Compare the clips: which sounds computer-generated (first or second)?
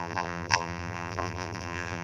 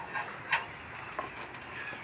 first